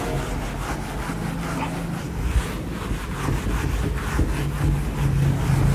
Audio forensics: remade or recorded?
recorded